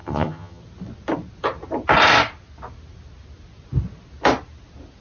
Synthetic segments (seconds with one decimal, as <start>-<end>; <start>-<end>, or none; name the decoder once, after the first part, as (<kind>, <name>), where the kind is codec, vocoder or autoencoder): 0.0-0.6 (vocoder, HiFi-GAN)